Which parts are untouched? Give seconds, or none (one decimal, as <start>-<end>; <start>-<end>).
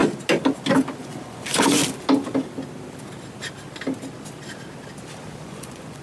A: 0.0-1.0; 1.8-5.4